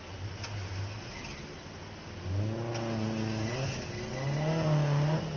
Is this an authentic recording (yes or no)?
yes